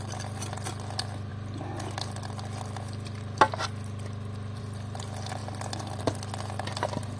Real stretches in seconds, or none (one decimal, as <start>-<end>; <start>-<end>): 0.0-7.2